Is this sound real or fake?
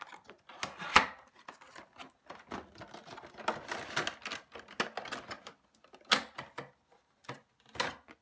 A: real